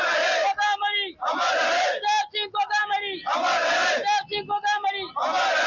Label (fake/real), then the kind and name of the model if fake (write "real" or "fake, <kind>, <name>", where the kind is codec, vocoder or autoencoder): real